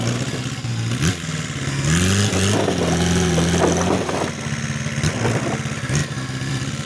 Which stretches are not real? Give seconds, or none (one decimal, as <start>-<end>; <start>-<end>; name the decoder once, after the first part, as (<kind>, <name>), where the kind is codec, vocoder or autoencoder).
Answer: 0.0-0.7 (vocoder, BigVGAN v2); 4.8-6.0; 6.5-6.9